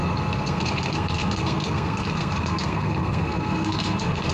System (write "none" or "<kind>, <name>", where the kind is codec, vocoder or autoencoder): codec, SNAC